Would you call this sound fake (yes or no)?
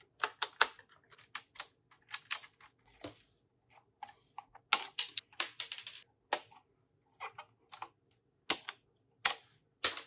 no